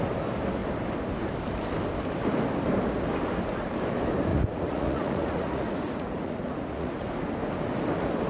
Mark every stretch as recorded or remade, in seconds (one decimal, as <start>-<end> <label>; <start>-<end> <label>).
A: 0.0-4.3 recorded; 4.3-7.1 remade; 7.1-8.3 recorded